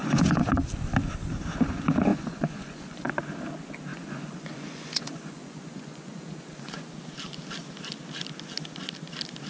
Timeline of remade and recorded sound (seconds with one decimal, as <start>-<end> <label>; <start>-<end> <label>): 0.0-0.7 remade; 0.7-2.1 recorded; 2.1-3.1 remade; 3.1-3.9 recorded; 3.9-6.9 remade; 6.9-9.5 recorded